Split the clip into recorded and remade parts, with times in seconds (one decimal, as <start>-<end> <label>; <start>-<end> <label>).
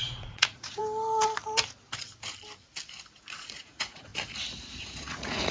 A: 0.0-0.8 remade; 0.8-3.1 recorded; 3.1-4.1 remade; 4.1-4.7 recorded; 4.7-5.5 remade